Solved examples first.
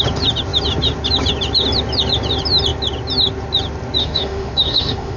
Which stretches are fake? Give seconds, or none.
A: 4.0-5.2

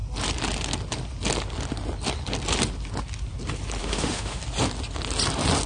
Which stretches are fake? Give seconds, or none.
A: 3.8-4.4

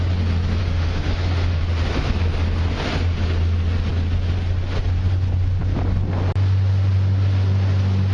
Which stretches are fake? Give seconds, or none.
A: 0.6-1.6

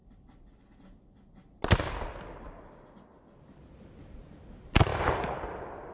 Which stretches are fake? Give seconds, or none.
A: none

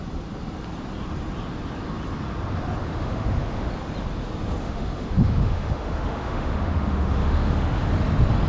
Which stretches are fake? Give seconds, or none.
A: 2.8-3.7; 4.6-7.9

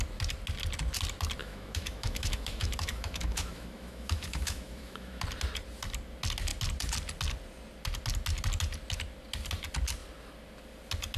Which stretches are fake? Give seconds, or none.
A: 1.4-5.2

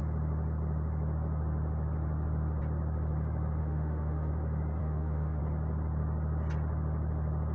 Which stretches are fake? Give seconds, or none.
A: 3.6-4.3; 4.8-5.4

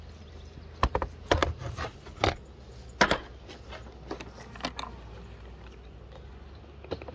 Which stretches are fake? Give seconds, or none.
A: none